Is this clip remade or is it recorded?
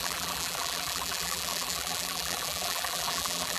remade